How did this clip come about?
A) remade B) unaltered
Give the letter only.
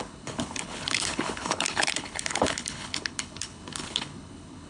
A